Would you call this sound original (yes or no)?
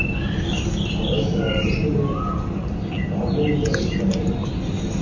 yes